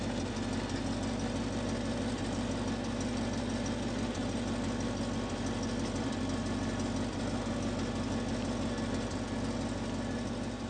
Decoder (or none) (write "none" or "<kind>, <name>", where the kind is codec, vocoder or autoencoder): none